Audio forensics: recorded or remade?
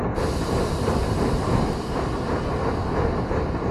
recorded